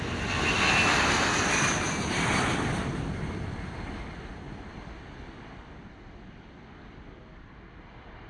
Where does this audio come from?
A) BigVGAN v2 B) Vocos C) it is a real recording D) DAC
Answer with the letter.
C